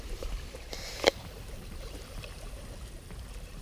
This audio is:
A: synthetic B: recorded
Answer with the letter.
A